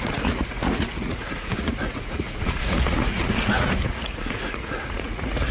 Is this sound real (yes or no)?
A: no